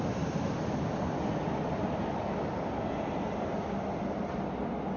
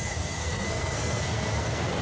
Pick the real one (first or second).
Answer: first